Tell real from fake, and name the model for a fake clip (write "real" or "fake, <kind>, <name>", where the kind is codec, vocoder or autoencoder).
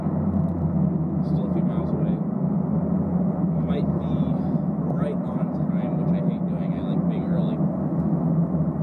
real